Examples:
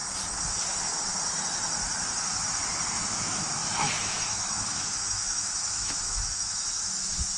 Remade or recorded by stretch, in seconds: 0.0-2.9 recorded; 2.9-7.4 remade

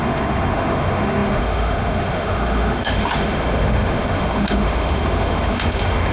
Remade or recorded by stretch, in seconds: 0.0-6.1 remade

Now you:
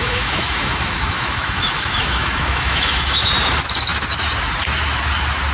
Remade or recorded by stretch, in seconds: 0.0-3.3 remade; 3.3-5.5 recorded

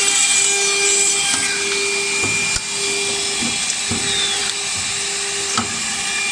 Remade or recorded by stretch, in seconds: 0.0-6.3 recorded